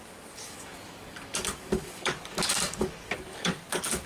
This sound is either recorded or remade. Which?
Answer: remade